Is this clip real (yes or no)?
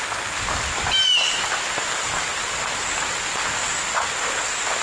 yes